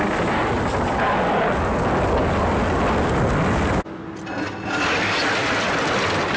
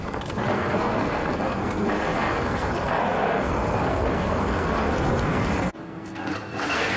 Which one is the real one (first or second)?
first